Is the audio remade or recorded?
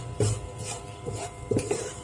remade